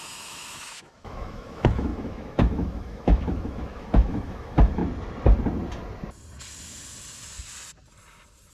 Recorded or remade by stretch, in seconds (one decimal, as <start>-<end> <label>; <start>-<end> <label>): 0.0-4.8 remade; 4.8-8.5 recorded